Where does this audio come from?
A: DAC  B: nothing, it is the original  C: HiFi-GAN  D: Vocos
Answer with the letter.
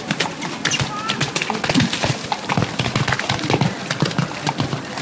B